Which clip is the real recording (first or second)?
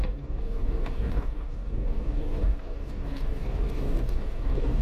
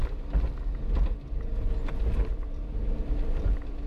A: second